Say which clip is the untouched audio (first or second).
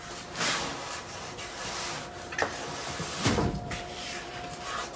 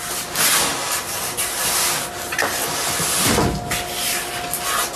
second